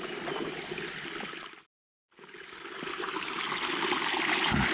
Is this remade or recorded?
recorded